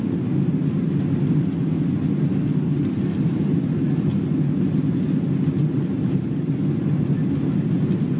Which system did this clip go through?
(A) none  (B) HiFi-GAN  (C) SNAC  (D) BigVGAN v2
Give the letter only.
A